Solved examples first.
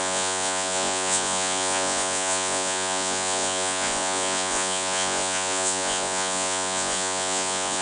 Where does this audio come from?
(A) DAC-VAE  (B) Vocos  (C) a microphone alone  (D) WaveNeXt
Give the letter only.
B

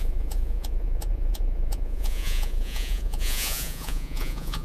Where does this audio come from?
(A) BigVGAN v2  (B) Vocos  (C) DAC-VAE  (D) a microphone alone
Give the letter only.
B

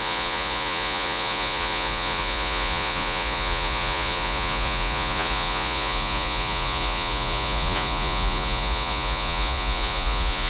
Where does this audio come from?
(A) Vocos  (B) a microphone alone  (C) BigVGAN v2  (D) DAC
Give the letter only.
A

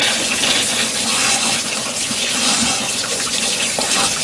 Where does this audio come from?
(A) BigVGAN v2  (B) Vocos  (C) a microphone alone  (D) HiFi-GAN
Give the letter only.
B